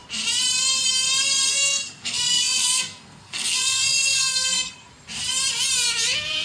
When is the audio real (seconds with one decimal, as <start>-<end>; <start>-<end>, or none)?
0.0-1.5; 4.7-6.4